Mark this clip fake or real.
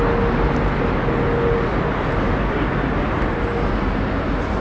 real